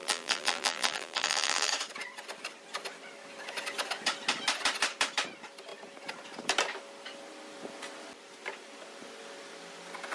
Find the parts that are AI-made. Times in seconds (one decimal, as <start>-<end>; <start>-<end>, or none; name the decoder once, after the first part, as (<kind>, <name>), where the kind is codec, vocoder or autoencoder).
0.0-1.7 (vocoder, BigVGAN v2)